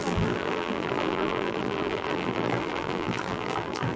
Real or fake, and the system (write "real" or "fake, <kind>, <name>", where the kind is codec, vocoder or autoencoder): fake, vocoder, BigVGAN v2